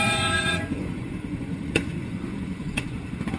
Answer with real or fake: fake